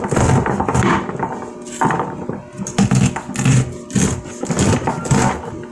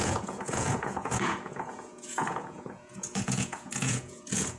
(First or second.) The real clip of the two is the first